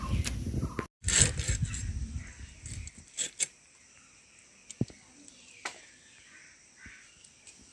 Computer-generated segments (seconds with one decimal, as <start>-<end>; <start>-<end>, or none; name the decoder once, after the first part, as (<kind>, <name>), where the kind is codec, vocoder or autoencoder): 2.8-7.2 (vocoder, BigVGAN v2)